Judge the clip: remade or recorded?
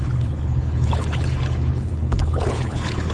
remade